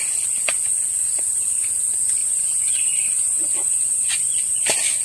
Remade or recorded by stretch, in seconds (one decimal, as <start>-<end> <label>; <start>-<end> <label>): 0.0-2.2 recorded; 2.2-4.1 remade; 4.1-5.0 recorded